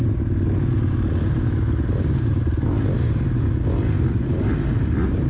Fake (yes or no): no